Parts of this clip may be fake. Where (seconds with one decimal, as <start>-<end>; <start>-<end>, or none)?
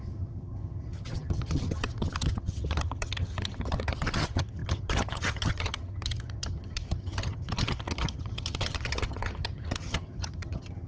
0.0-10.9